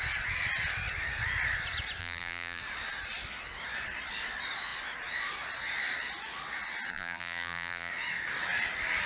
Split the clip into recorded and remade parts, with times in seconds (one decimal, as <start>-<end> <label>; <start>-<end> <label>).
0.0-2.0 recorded; 2.0-2.6 remade; 2.6-6.9 recorded; 6.9-7.9 remade; 7.9-9.1 recorded